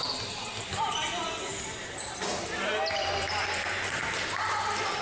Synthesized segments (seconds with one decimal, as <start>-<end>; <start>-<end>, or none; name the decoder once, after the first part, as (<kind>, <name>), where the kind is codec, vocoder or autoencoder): none

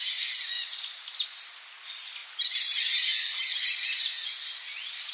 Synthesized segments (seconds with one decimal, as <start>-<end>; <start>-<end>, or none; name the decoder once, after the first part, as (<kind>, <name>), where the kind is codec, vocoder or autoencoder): none

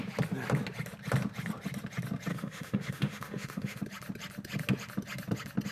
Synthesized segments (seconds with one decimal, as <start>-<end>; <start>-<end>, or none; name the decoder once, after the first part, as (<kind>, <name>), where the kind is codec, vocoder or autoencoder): 2.3-3.8 (autoencoder, DAC-VAE)

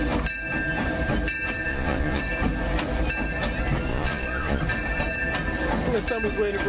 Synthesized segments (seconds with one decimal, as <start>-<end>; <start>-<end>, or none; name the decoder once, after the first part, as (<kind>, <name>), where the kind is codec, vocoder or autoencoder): 1.7-2.2 (vocoder, Vocos); 3.9-4.6

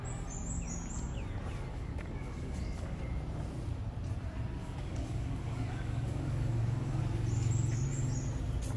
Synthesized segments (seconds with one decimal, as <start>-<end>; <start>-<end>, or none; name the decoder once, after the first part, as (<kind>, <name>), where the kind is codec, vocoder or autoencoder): 1.7-3.0 (codec, DAC); 4.6-7.0

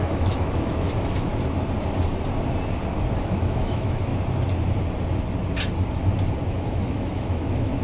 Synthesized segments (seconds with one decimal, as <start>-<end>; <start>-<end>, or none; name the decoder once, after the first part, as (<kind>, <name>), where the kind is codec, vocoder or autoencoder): 0.0-1.3 (autoencoder, DAC-VAE); 3.2-4.1; 6.5-7.8

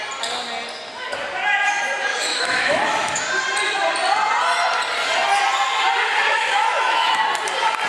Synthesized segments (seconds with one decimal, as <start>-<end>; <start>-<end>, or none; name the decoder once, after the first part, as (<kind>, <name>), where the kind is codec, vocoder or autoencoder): 2.1-3.2 (autoencoder, DAC-VAE); 6.3-7.2

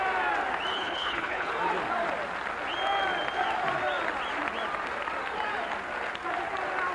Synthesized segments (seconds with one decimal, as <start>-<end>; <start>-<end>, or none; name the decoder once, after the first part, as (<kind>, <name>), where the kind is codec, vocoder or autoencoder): 0.7-1.5 (codec, HILCodec)